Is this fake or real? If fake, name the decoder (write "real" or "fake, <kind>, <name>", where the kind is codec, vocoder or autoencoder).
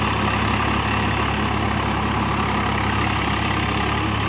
real